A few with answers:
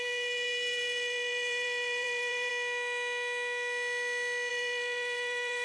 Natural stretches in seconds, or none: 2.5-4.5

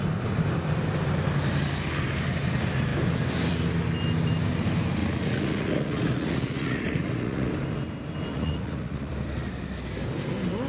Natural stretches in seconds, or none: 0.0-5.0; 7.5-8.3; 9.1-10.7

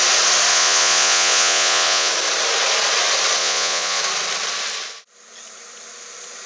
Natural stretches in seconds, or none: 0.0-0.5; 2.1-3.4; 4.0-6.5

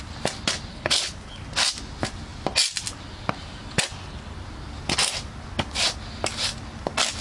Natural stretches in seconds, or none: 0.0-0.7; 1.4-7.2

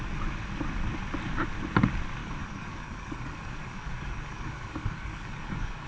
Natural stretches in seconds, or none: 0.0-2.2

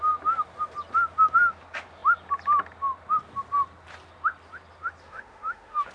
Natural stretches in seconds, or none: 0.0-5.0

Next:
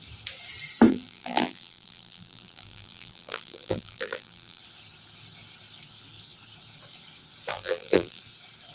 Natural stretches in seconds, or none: 0.0-0.9; 4.6-7.5; 8.2-8.7

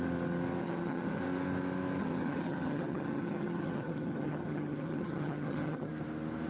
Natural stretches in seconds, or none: 0.0-0.6; 1.2-2.0; 5.9-6.5